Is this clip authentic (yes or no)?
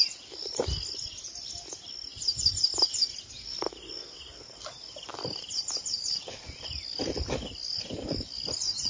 yes